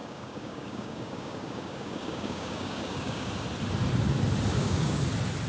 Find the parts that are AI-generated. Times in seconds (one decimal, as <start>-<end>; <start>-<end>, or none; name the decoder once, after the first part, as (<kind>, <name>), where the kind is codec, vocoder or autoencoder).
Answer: 0.0-3.3 (codec, DAC); 4.5-5.0